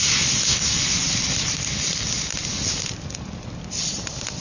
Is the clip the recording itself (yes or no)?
no